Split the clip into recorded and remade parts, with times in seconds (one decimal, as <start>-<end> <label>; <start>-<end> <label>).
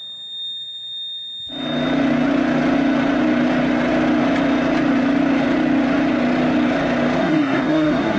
0.0-7.2 recorded; 7.2-8.2 remade